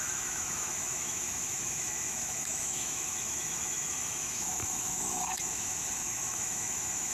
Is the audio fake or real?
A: fake